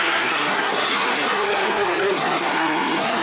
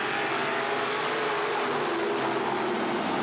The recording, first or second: second